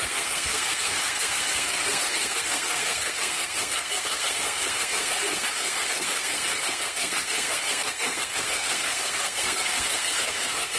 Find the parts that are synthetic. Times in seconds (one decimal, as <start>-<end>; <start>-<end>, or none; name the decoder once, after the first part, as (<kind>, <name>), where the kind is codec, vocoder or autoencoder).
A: 0.0-10.8 (codec, SNAC)